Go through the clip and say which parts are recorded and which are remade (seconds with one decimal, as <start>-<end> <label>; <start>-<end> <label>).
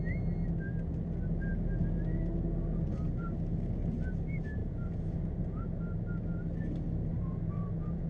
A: 0.0-4.6 recorded; 4.6-5.8 remade; 5.8-7.1 recorded; 7.1-8.1 remade